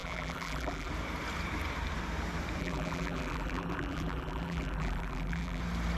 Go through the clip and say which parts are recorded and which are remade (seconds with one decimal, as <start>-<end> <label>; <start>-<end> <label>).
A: 0.0-0.9 remade; 0.9-2.6 recorded; 2.6-5.6 remade; 5.6-6.0 recorded